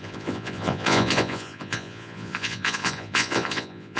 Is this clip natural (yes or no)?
no